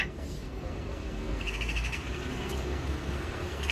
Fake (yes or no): yes